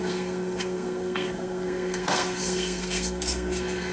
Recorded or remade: remade